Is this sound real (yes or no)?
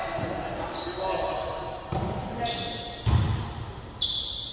yes